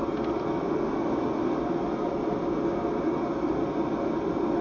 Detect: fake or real real